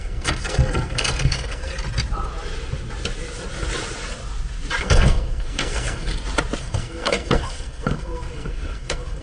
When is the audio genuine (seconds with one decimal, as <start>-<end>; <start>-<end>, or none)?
1.7-4.8; 6.1-6.6